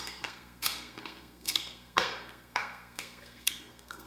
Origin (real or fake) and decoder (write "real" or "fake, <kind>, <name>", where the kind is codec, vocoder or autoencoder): fake, codec, SNAC